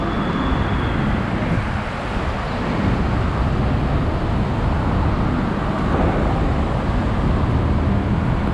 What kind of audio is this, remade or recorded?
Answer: recorded